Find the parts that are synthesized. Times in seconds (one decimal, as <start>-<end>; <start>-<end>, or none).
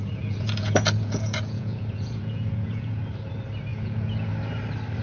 0.0-3.0; 3.7-4.3